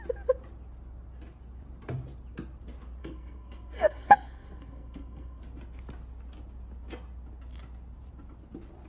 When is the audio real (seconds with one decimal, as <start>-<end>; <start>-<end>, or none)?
0.0-3.0; 5.4-8.9